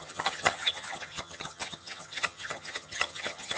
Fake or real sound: fake